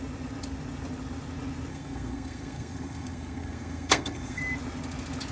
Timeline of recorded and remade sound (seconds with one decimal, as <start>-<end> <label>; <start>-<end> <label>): 0.0-1.7 recorded; 1.7-4.4 remade; 4.4-5.3 recorded